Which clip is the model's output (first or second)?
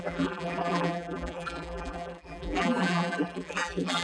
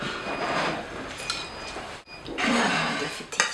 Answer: first